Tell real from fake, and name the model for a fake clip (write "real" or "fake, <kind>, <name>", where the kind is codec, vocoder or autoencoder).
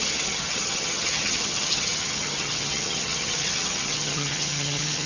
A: fake, vocoder, HiFi-GAN